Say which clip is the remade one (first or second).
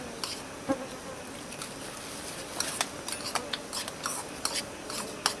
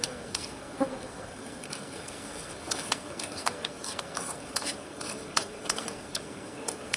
second